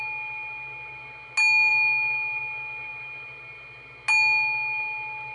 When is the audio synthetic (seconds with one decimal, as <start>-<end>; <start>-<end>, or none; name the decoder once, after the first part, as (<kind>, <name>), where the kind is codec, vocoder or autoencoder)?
none

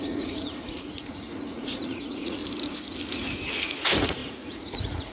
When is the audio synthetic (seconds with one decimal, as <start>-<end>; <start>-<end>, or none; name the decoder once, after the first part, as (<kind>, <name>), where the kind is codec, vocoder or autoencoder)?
0.0-2.4 (vocoder, Vocos); 3.6-5.1

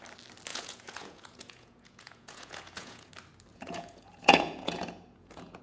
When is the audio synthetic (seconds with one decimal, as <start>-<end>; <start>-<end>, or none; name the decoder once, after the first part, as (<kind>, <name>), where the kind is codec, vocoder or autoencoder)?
0.5-3.1 (vocoder, Vocos); 3.5-5.6